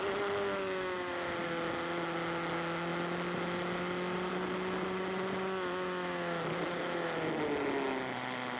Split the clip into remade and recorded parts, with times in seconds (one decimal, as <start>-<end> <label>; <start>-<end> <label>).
0.0-8.6 recorded

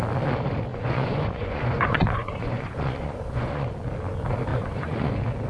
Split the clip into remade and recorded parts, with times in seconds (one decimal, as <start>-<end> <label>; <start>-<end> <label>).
0.0-0.7 recorded; 0.7-3.7 remade; 3.7-4.5 recorded; 4.5-5.1 remade; 5.1-5.5 recorded